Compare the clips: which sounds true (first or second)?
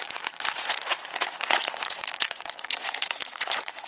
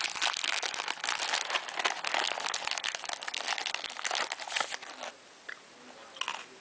second